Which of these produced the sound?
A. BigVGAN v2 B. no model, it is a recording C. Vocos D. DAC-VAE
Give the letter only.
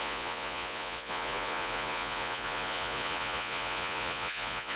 C